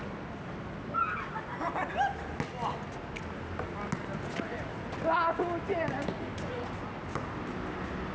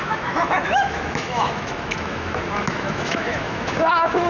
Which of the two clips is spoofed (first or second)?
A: second